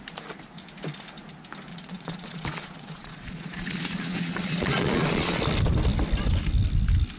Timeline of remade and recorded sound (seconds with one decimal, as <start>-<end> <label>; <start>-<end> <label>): 0.0-1.7 recorded; 1.7-5.4 remade; 5.4-7.2 recorded